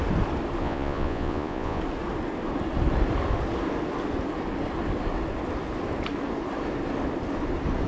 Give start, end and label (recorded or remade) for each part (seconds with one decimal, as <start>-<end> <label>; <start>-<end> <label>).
0.0-0.6 recorded; 0.6-1.8 remade; 1.8-7.9 recorded